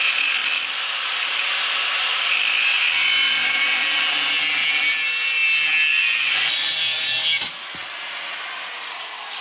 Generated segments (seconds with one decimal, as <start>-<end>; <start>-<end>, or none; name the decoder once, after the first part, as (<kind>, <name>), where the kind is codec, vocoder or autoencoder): 5.9-6.7 (vocoder, Vocos)